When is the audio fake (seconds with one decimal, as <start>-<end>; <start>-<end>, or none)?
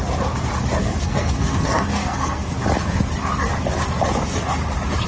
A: 0.8-2.5